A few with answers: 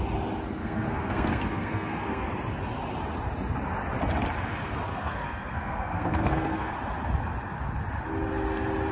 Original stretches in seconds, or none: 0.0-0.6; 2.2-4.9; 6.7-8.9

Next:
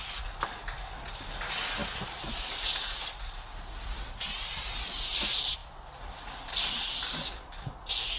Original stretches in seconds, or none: 0.0-8.2

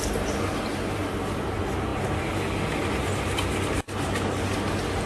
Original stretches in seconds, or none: 0.0-5.1

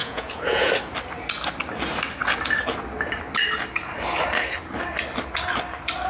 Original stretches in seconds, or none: 0.7-6.1